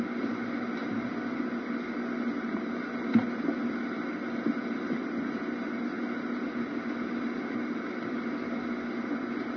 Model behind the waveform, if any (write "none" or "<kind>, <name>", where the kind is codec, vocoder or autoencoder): none